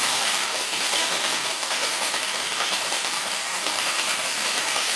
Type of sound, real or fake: fake